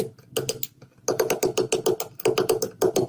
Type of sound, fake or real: real